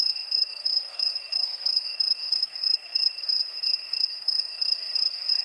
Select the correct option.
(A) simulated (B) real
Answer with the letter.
A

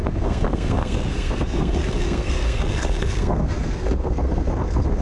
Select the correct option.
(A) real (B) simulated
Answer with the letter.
B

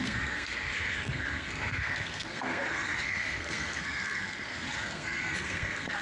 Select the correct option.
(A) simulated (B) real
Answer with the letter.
A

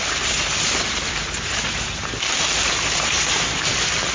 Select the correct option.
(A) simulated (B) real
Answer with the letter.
B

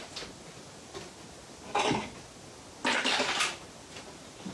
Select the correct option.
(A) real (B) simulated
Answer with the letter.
A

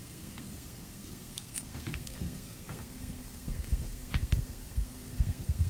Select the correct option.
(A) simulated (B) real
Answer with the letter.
A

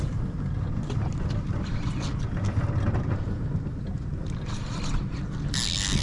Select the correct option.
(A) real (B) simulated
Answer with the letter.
A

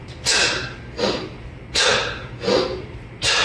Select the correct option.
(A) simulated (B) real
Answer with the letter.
B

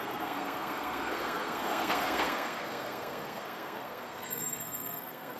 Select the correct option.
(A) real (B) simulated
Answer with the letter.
B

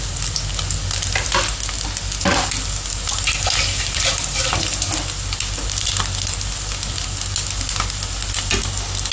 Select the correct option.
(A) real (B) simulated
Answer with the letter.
A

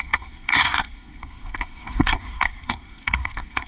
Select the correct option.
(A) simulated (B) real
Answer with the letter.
A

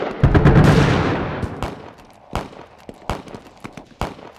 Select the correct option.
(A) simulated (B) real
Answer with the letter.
B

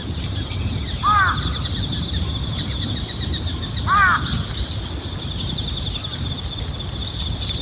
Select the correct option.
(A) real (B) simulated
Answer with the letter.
A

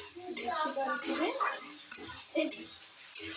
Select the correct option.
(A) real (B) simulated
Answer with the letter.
A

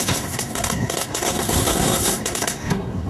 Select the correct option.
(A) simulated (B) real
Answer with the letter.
A